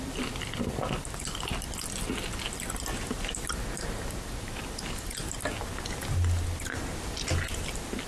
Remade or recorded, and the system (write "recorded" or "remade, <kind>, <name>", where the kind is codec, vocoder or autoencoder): recorded